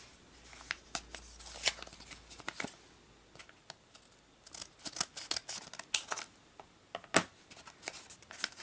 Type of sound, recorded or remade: recorded